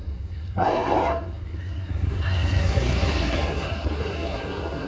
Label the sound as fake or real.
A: fake